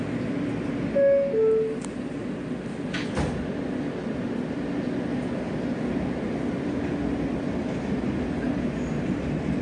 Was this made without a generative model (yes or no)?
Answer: yes